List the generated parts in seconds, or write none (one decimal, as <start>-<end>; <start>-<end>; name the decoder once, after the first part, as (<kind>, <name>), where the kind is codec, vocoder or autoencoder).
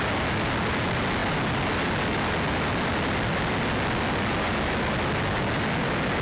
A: none